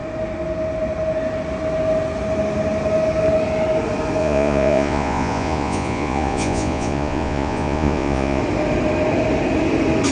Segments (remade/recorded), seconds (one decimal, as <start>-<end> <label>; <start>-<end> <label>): 0.0-4.2 recorded; 4.2-8.4 remade; 8.4-10.1 recorded